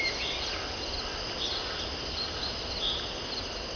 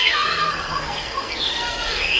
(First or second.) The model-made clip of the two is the second